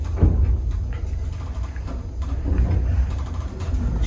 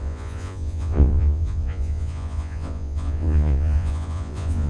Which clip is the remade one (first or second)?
second